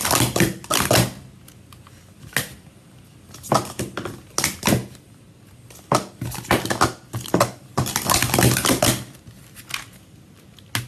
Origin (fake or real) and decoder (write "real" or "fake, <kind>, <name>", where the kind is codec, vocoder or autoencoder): real